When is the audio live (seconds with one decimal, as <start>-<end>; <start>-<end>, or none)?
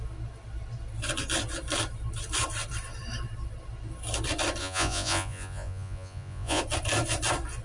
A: 0.0-4.6; 6.6-7.6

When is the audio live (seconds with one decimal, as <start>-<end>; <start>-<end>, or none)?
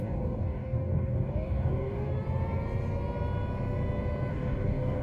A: 2.1-4.3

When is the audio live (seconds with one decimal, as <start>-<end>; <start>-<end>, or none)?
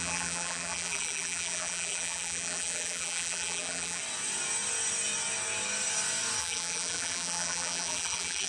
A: 4.0-6.4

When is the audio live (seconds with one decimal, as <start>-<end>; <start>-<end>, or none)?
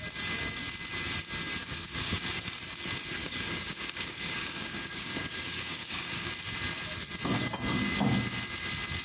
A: 0.0-1.6; 2.2-3.2; 6.3-9.0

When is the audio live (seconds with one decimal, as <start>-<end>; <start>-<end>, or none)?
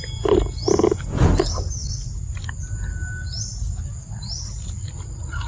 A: 0.0-5.5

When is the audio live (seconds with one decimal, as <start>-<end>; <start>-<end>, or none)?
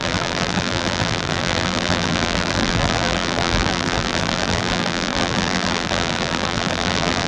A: none